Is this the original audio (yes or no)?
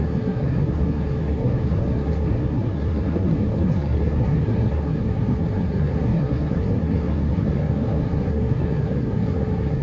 no